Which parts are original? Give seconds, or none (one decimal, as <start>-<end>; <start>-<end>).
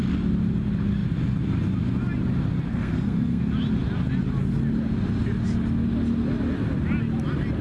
0.0-2.7; 3.4-7.6